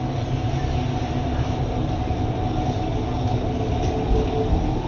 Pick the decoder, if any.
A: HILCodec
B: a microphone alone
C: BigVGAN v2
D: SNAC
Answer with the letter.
B